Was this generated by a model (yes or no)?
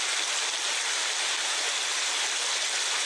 no